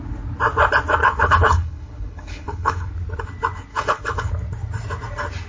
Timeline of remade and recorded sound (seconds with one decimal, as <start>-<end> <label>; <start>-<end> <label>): 0.0-1.0 recorded; 1.0-2.9 remade; 2.9-3.7 recorded; 3.7-4.3 remade; 4.3-5.5 recorded

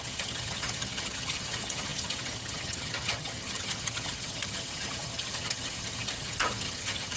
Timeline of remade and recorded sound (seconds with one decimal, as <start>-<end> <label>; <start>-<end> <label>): 0.0-7.2 remade

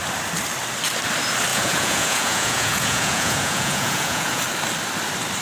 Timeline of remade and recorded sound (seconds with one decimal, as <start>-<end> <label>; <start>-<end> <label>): 0.0-1.5 recorded; 1.5-4.4 remade; 4.4-5.4 recorded

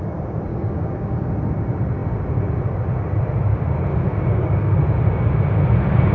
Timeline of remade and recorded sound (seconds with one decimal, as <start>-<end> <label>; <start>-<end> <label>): 0.0-0.5 recorded; 0.5-1.3 remade; 1.3-3.9 recorded; 3.9-4.8 remade; 4.8-6.1 recorded

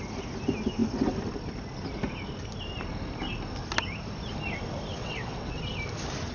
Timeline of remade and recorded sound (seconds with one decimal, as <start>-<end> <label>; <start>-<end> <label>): 0.0-5.0 recorded; 5.0-5.6 remade; 5.6-6.3 recorded